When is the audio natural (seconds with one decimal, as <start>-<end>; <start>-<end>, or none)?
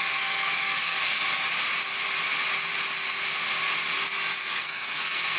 1.2-4.4